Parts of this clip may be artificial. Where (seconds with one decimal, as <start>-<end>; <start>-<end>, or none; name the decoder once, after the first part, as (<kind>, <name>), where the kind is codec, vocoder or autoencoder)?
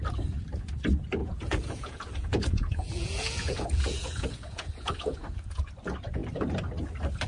1.2-5.6 (vocoder, Vocos)